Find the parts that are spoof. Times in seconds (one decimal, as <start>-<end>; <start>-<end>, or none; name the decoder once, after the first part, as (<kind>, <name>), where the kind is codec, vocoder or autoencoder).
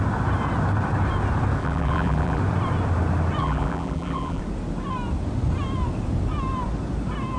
1.6-2.4 (vocoder, BigVGAN v2); 3.4-4.4